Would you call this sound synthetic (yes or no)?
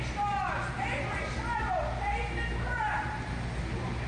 no